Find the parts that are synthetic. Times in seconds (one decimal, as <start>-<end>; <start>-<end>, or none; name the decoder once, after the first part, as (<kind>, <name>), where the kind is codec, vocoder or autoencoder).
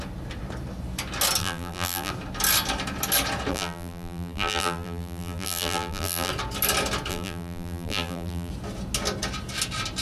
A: 1.4-2.1 (vocoder, BigVGAN v2); 3.5-6.3; 7.1-8.5